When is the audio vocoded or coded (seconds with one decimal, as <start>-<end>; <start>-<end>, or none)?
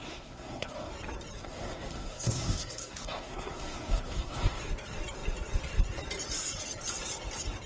0.0-0.9; 1.4-4.6